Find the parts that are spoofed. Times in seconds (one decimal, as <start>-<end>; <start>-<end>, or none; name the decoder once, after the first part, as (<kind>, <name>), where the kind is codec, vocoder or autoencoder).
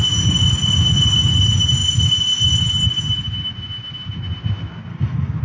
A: 4.9-5.4 (codec, DAC)